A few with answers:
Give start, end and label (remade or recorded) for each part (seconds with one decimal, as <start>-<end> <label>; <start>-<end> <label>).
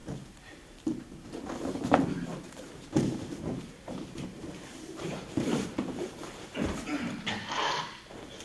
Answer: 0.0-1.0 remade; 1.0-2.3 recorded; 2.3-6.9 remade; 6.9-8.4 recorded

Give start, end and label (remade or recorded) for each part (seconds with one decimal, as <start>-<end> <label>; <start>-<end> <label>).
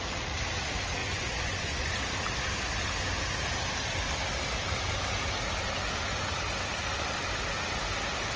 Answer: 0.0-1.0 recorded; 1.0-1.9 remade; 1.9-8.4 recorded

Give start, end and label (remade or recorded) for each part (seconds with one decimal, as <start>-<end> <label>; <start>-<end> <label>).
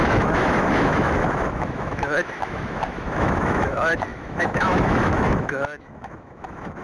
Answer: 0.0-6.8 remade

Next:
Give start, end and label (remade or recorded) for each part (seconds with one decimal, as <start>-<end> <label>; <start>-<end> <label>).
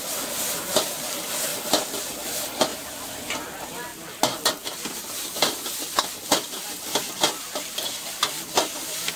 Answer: 0.0-1.5 remade; 1.5-2.0 recorded; 2.0-3.9 remade; 3.9-4.9 recorded; 4.9-6.9 remade; 6.9-7.4 recorded; 7.4-9.2 remade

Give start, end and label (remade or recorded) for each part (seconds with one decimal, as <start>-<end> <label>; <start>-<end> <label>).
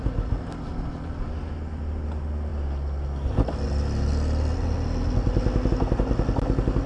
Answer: 0.0-6.9 recorded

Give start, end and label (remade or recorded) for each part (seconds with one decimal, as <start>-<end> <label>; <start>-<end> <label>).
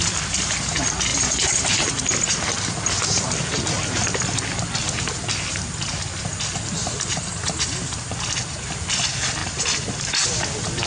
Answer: 0.0-1.1 recorded; 1.1-1.9 remade; 1.9-9.4 recorded; 9.4-10.1 remade; 10.1-10.9 recorded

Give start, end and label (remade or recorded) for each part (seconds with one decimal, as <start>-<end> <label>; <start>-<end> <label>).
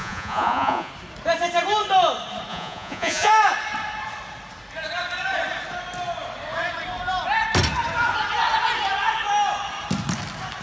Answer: 0.0-0.9 remade; 0.9-2.5 recorded; 2.5-3.3 remade; 3.3-10.6 recorded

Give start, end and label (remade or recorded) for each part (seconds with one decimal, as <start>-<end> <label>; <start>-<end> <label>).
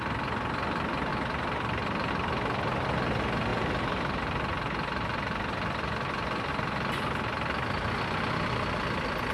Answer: 0.0-1.1 recorded; 1.1-2.1 remade; 2.1-3.5 recorded; 3.5-6.5 remade; 6.5-9.3 recorded